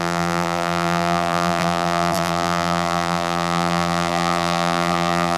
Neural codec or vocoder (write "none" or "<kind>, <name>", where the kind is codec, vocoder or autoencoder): vocoder, BigVGAN v2